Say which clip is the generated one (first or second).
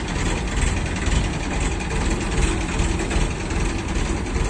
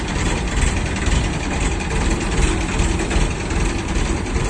second